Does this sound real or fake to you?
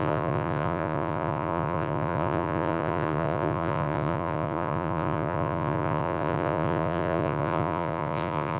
fake